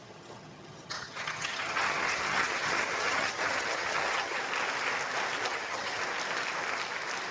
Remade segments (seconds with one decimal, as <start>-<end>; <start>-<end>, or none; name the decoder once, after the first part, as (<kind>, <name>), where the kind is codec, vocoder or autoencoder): 0.0-4.4 (vocoder, HiFi-GAN); 5.5-6.0